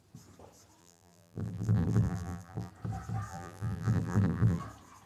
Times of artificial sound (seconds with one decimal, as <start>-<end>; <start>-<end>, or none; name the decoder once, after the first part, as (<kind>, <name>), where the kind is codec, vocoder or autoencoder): 0.8-2.7 (vocoder, BigVGAN v2); 3.3-4.6